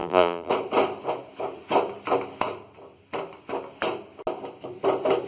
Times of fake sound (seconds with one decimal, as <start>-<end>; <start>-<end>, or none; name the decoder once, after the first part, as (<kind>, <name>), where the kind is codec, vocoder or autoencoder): 0.0-0.5 (vocoder, BigVGAN v2)